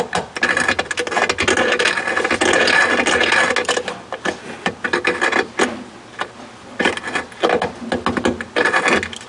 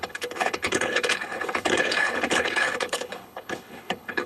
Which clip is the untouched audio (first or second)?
first